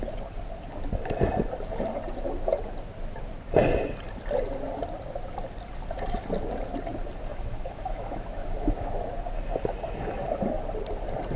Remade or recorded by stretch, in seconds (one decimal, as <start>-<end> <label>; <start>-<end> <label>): 0.0-7.3 recorded; 7.3-8.9 remade; 8.9-11.4 recorded